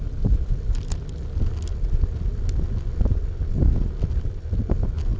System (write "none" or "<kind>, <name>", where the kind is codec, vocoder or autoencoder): none